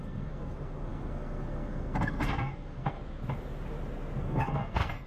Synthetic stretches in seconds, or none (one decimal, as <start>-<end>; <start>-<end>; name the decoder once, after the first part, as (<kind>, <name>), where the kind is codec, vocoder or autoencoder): 0.0-3.0 (codec, SNAC); 4.2-5.1